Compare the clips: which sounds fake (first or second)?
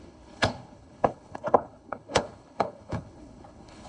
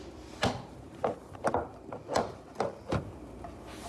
first